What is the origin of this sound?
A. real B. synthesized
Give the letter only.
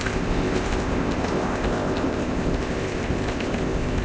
B